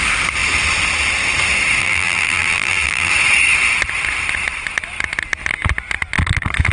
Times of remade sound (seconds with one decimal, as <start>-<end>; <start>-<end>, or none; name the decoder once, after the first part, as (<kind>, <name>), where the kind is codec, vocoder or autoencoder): 1.8-3.1 (vocoder, BigVGAN v2)